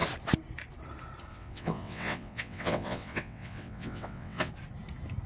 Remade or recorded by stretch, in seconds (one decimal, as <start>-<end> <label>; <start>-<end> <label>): 0.0-1.3 recorded; 1.3-4.5 remade; 4.5-5.3 recorded